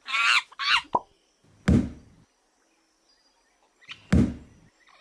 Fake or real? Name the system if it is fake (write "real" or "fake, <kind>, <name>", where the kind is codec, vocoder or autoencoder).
real